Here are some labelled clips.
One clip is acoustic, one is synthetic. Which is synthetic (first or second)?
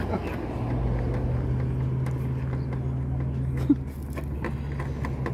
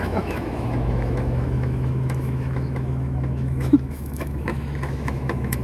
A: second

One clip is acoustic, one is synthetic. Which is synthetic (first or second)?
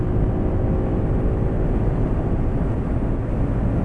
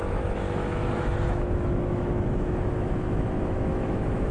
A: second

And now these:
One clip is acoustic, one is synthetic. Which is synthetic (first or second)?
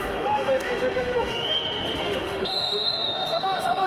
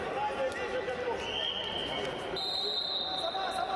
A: first